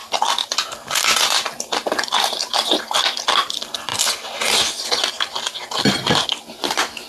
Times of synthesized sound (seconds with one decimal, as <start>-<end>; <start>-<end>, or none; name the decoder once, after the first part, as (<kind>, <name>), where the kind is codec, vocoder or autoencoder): 1.9-3.9 (vocoder, BigVGAN v2); 6.3-7.1